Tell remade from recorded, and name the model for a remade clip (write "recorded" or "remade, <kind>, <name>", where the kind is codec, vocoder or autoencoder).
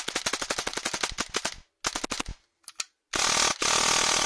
recorded